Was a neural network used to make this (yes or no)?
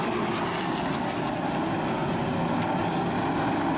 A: no